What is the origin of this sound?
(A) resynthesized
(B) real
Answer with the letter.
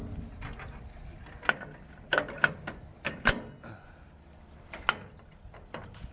B